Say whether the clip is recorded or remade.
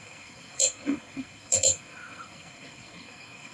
remade